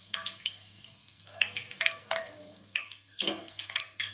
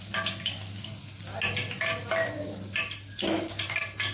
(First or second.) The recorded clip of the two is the second